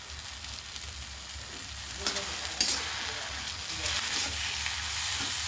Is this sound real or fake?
real